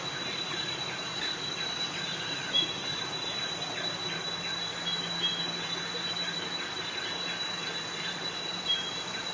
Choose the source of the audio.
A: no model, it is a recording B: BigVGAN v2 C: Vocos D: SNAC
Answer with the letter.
A